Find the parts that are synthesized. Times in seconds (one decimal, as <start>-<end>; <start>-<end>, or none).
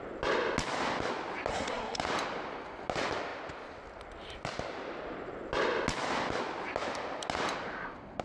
1.5-2.0